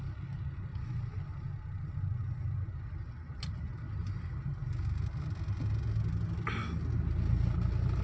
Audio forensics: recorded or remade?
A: recorded